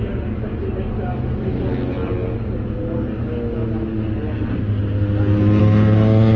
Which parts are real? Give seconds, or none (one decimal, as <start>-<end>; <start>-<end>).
0.0-6.4